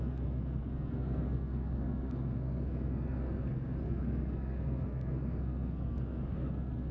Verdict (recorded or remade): remade